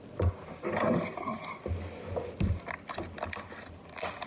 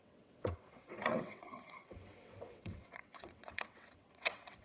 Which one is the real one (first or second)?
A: first